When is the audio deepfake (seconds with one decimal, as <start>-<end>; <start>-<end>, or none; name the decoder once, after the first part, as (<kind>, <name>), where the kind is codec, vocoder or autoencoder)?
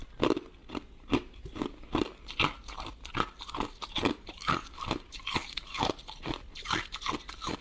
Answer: 0.0-0.6 (vocoder, BigVGAN v2); 3.9-7.6